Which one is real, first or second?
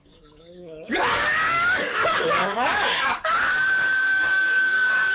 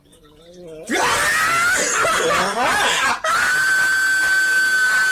second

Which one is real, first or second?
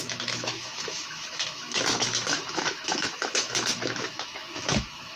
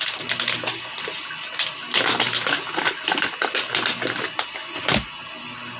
second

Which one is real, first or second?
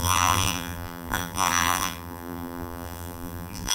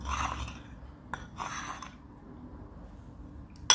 second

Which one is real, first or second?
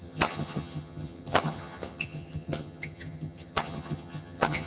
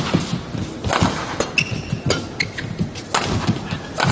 second